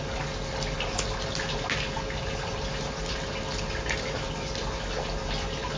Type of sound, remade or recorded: recorded